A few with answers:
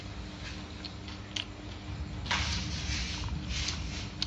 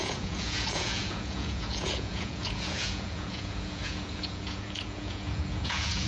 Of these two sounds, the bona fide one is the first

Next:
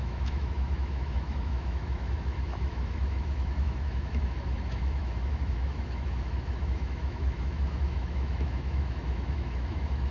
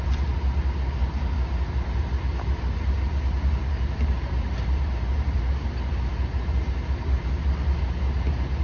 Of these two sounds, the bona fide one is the second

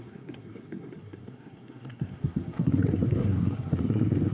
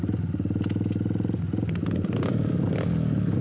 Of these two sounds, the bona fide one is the second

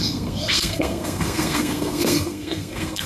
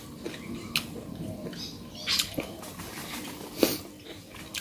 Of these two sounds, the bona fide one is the second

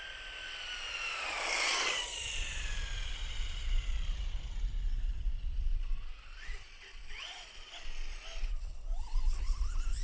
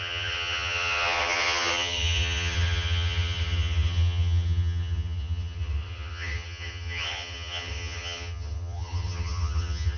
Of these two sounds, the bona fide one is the first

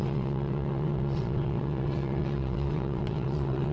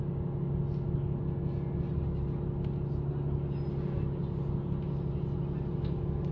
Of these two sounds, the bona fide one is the second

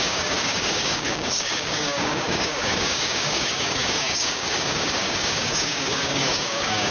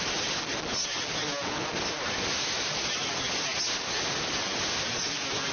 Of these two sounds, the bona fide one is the second